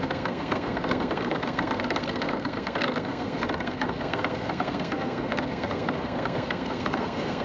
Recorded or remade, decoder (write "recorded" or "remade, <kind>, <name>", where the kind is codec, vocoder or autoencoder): remade, codec, SNAC